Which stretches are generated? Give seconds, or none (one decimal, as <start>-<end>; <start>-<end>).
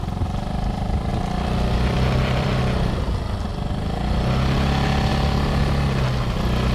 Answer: 1.1-2.6